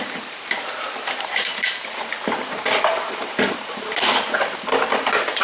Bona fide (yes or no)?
no